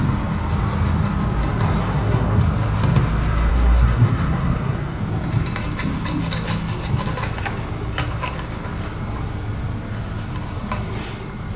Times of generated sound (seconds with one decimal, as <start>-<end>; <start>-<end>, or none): 1.8-2.4; 3.5-5.0